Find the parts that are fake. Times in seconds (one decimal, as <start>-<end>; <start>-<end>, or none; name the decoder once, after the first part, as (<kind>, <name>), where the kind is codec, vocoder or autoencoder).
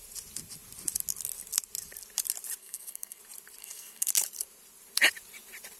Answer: 2.6-3.2 (codec, SNAC); 3.6-4.1